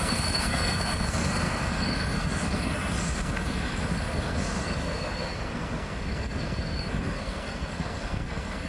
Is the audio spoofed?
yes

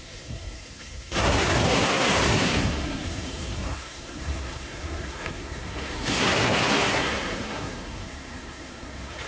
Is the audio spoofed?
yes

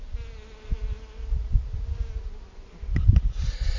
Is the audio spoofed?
no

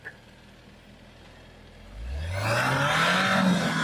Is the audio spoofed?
no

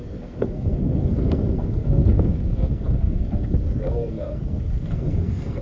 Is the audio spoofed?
yes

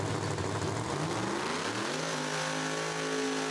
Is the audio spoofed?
no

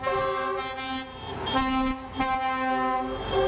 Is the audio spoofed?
no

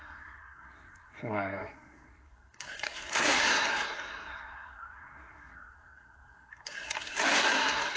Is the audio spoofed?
yes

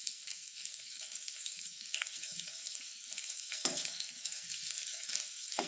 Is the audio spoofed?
yes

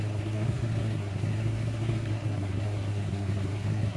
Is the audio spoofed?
yes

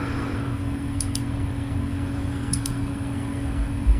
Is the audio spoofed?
yes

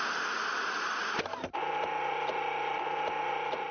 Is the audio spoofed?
no